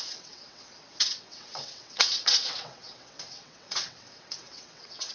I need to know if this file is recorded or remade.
remade